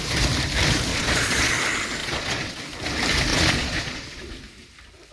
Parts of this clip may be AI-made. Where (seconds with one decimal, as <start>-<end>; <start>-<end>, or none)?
0.9-1.5; 2.0-2.6; 3.3-4.2